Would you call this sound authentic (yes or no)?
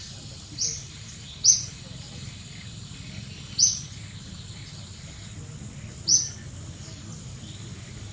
yes